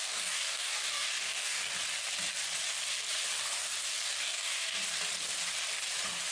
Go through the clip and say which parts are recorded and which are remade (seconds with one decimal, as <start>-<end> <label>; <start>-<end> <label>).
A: 0.0-1.7 remade; 1.7-4.2 recorded; 4.2-4.8 remade; 4.8-6.3 recorded

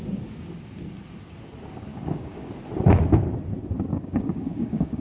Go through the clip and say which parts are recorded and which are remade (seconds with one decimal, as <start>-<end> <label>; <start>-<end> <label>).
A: 0.0-1.9 recorded; 1.9-2.5 remade; 2.5-3.9 recorded; 3.9-5.0 remade

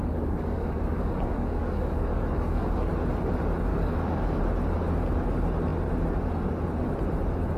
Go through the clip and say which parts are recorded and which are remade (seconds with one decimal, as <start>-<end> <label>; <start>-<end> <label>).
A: 0.0-2.9 remade; 2.9-3.7 recorded; 3.7-4.4 remade; 4.4-7.6 recorded

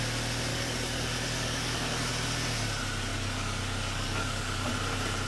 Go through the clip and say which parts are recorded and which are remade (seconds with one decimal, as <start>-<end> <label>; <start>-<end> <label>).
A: 0.0-0.5 recorded; 0.5-2.1 remade; 2.1-3.1 recorded; 3.1-4.7 remade; 4.7-5.3 recorded